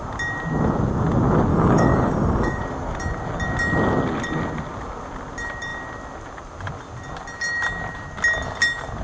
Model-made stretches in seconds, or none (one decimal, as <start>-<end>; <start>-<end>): 1.5-2.6

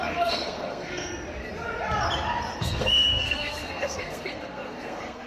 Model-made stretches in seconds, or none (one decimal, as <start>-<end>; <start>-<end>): 0.0-1.1; 2.6-5.3

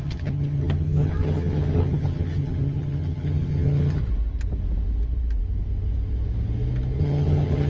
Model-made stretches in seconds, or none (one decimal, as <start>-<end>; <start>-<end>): 0.0-4.0; 7.0-7.7

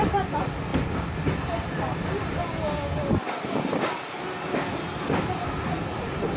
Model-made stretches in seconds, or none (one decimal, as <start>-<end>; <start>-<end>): none